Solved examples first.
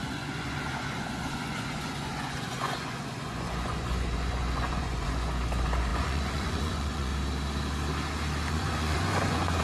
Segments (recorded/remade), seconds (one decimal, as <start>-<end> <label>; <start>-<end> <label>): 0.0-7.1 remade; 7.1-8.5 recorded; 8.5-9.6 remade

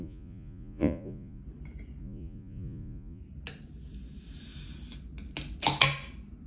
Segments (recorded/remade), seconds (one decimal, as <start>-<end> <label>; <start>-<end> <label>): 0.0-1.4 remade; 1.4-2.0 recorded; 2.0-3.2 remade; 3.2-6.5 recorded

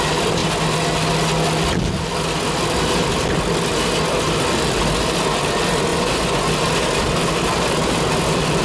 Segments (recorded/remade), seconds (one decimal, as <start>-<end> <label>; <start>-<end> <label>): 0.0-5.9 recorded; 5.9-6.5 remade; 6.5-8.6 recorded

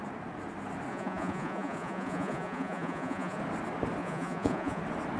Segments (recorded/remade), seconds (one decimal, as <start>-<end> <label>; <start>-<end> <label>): 0.0-0.9 recorded; 0.9-3.4 remade; 3.4-4.0 recorded; 4.0-4.8 remade; 4.8-5.2 recorded